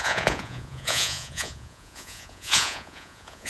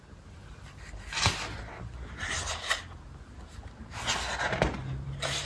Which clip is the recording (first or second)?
second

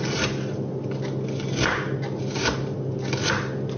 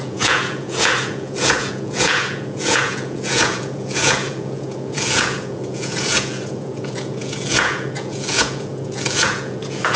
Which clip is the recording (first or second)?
first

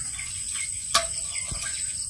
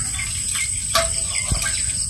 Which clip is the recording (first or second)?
second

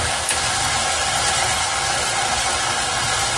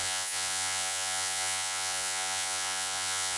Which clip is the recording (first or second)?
first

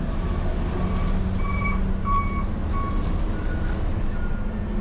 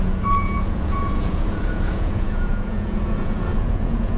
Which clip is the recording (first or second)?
first